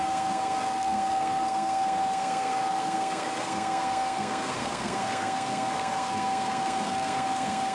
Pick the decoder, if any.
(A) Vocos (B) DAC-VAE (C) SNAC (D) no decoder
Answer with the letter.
C